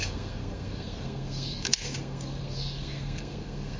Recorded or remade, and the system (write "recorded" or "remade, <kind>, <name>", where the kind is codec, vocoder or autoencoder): remade, codec, SNAC